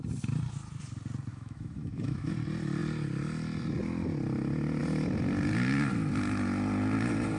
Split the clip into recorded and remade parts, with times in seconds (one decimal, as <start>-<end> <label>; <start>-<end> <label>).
0.0-1.3 recorded; 1.3-2.3 remade; 2.3-7.4 recorded

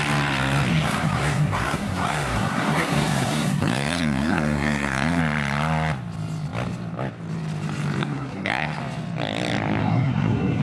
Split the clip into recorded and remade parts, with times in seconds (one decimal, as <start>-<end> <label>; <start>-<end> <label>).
0.0-0.7 recorded; 0.7-5.2 remade; 5.2-8.0 recorded; 8.0-8.8 remade; 8.8-9.8 recorded; 9.8-10.6 remade

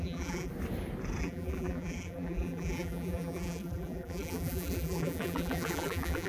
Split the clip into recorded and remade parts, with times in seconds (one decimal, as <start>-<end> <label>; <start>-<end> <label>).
0.0-0.5 remade; 0.5-1.2 recorded; 1.2-6.3 remade

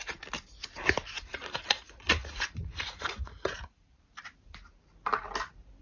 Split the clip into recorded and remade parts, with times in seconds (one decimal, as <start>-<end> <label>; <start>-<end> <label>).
0.0-1.4 recorded; 1.4-3.8 remade; 3.8-5.8 recorded

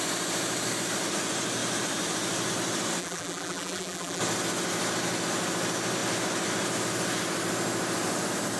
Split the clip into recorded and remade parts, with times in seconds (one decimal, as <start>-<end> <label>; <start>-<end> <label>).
0.0-3.0 recorded; 3.0-4.2 remade; 4.2-8.6 recorded